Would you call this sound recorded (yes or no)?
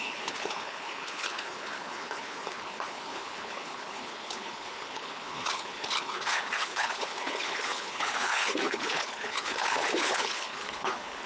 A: no